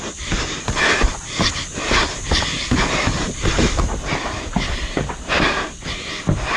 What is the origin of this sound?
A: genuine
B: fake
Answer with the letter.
B